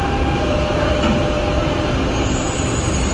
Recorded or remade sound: recorded